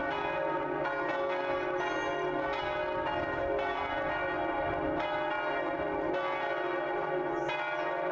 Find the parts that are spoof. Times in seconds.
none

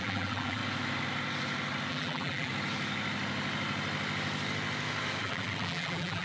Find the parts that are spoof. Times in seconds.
0.0-0.6 (vocoder, BigVGAN v2); 1.9-2.5; 5.2-6.2

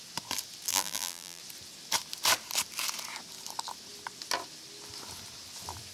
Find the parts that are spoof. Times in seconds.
0.7-1.4 (vocoder, BigVGAN v2)

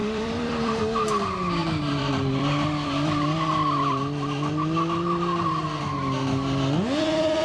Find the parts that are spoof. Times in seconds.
0.0-0.8 (vocoder, BigVGAN v2); 1.6-5.8

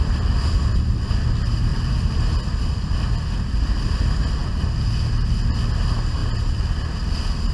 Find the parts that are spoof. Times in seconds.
1.7-2.3 (vocoder, BigVGAN v2)

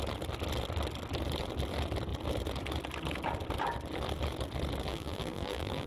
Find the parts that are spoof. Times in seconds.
4.9-5.9 (vocoder, BigVGAN v2)